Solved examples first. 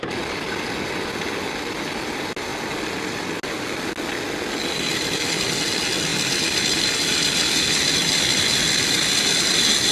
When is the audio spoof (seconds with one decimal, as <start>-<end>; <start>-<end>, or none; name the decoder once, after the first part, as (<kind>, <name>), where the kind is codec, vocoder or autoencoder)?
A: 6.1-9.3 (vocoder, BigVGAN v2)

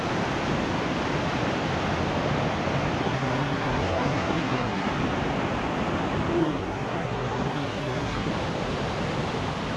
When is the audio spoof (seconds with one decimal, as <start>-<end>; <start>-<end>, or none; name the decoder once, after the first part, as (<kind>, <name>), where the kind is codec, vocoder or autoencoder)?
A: 3.0-4.9 (codec, SNAC); 6.4-8.3

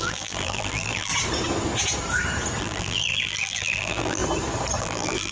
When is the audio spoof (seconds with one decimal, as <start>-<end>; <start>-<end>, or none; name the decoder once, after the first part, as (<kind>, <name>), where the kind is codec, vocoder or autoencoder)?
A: 0.0-1.1 (vocoder, BigVGAN v2); 2.6-4.2; 4.8-5.3